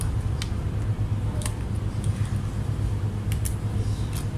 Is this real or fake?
real